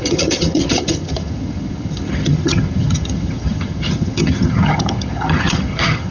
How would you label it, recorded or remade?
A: remade